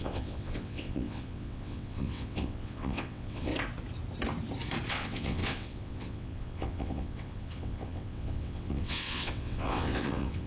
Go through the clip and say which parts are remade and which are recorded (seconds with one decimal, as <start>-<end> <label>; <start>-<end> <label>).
0.0-3.5 remade; 3.5-4.9 recorded; 4.9-10.5 remade